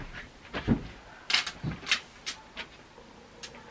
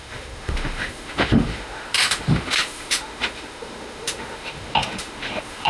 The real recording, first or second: first